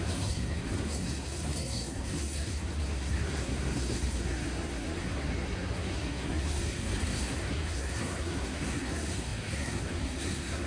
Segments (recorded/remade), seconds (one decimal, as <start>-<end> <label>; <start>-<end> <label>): 0.0-10.7 remade